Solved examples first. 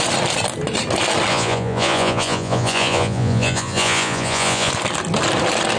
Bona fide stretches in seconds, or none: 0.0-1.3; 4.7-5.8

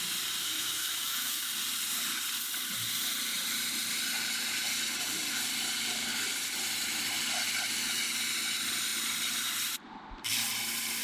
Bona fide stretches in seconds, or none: 0.0-0.4; 1.5-11.0

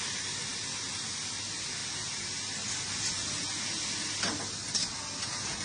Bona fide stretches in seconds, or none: 0.0-5.6

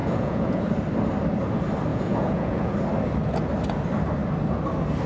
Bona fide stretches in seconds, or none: 0.6-1.9; 2.7-5.1

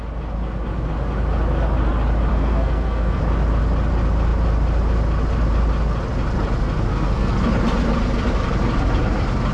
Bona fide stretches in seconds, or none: 0.0-2.3; 3.2-6.9; 7.4-9.5

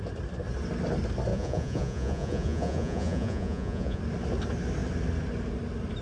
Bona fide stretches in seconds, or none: 0.0-1.3; 4.0-6.0

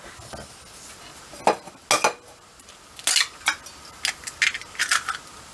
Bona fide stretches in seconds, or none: 0.0-5.5